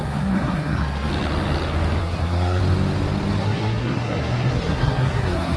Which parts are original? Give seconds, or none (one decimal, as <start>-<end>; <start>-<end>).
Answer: 1.1-2.0; 2.6-3.4